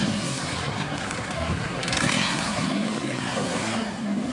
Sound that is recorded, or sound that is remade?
remade